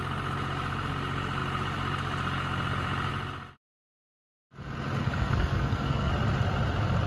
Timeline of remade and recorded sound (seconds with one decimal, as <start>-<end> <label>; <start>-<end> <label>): 0.0-5.0 recorded; 5.0-6.1 remade; 6.1-7.1 recorded